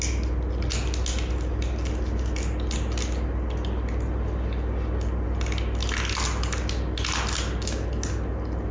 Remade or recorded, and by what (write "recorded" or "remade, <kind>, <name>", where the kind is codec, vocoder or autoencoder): recorded